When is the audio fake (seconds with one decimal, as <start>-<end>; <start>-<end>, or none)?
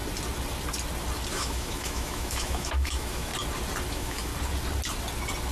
1.3-3.3; 3.9-4.3